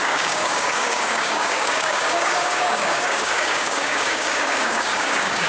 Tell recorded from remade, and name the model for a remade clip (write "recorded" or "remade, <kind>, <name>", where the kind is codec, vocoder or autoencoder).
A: remade, codec, DAC